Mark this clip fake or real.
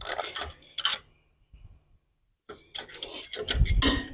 real